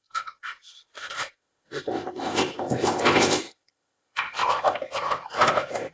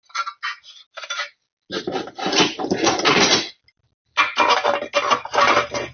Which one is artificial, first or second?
first